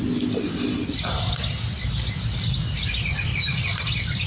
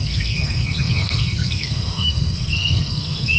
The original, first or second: first